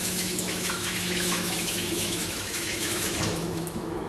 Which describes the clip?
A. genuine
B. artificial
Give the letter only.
B